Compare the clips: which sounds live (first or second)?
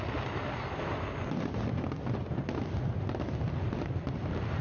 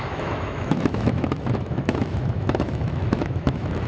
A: first